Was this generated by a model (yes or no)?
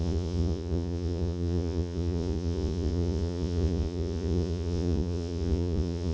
yes